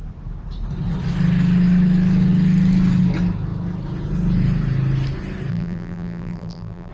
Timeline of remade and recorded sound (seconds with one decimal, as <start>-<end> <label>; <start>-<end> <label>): 0.0-5.5 recorded; 5.5-6.9 remade